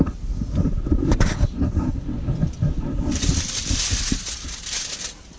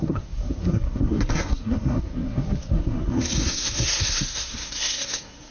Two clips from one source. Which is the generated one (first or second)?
second